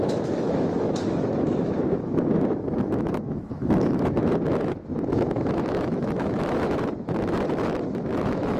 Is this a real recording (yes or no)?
no